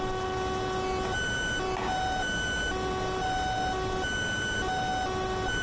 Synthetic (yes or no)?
no